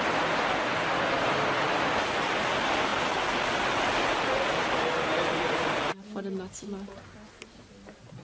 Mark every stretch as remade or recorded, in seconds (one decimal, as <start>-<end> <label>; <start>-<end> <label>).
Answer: 0.0-8.2 recorded